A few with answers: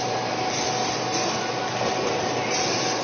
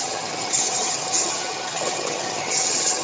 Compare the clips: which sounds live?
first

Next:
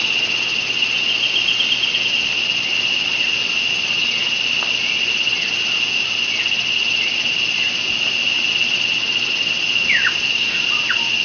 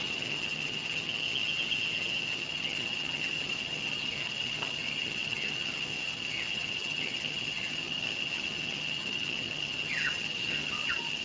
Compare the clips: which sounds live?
first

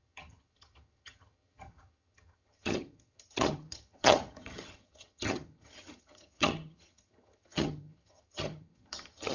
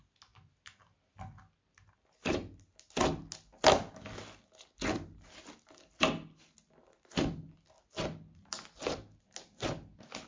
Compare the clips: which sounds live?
second